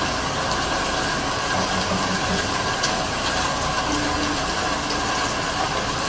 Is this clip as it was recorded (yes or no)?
yes